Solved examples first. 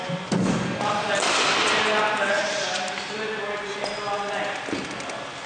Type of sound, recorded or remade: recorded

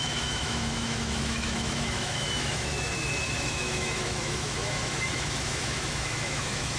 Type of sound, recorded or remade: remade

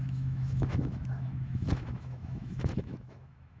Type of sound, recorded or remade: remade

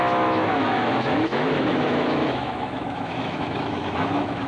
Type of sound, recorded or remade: remade